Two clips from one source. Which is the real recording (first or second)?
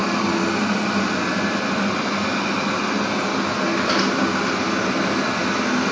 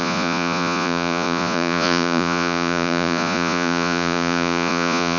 first